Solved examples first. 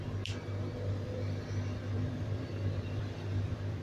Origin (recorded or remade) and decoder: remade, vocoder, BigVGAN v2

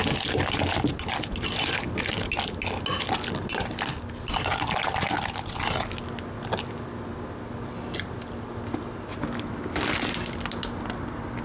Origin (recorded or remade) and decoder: recorded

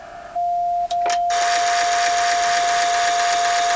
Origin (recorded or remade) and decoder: recorded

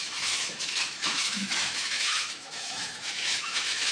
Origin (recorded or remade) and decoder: remade, autoencoder, DAC-VAE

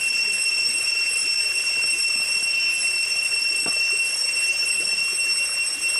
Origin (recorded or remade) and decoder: recorded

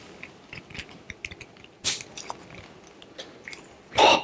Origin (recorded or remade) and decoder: recorded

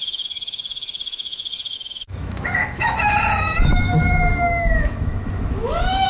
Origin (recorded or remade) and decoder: remade, autoencoder, DAC-VAE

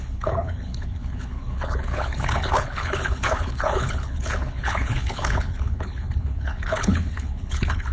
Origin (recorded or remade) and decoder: remade, codec, HILCodec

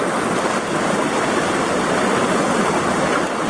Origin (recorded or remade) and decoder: remade, vocoder, BigVGAN v2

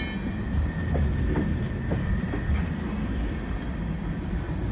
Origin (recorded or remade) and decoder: recorded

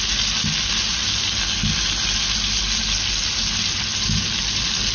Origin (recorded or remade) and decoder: recorded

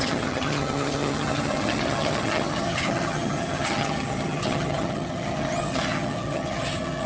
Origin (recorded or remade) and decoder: remade, vocoder, HiFi-GAN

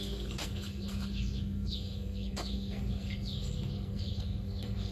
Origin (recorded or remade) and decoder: remade, codec, SNAC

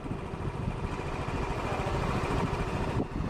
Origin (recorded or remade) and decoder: remade, vocoder, BigVGAN v2